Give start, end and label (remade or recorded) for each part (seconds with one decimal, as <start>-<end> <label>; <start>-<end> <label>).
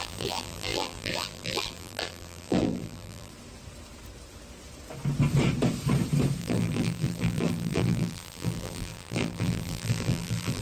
0.0-3.3 remade; 3.3-6.4 recorded; 6.4-10.6 remade